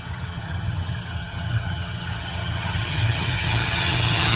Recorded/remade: remade